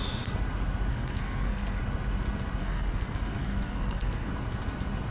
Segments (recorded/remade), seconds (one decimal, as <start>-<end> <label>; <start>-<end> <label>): 0.0-0.9 recorded; 0.9-1.8 remade; 1.8-2.6 recorded; 2.6-4.3 remade; 4.3-5.1 recorded